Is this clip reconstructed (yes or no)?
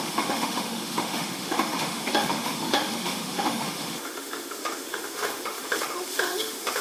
yes